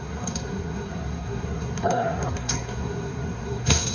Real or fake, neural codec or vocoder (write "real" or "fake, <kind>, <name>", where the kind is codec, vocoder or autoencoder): fake, codec, SNAC